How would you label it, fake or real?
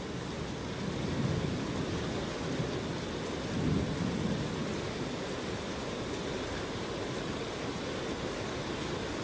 real